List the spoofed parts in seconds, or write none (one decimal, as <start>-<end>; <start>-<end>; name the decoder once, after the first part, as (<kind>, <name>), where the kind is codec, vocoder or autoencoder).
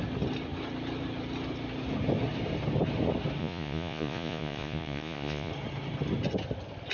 3.4-5.5 (vocoder, Vocos)